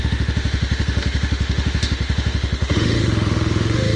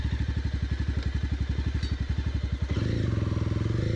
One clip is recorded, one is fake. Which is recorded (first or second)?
second